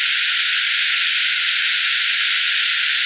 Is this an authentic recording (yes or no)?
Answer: yes